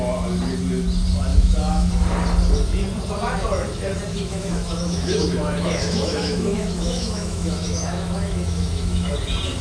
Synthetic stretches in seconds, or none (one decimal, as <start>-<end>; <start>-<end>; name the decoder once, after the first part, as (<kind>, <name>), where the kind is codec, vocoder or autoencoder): 1.3-1.9 (autoencoder, DAC-VAE); 4.1-9.1